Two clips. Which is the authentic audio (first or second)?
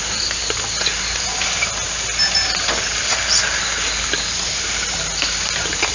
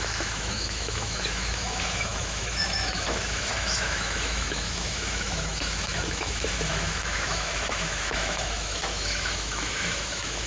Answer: first